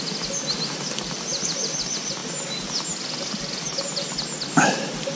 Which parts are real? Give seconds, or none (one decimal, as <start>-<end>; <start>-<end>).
0.0-5.2